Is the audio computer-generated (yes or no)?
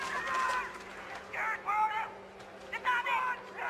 no